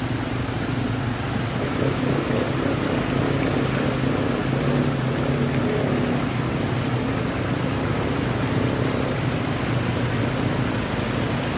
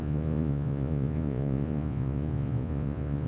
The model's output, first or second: second